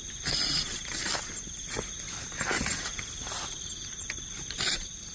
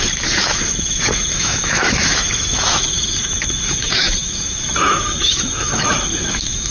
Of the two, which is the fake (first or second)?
second